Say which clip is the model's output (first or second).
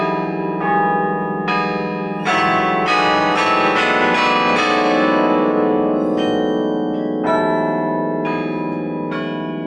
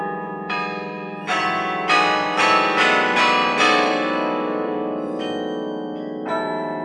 second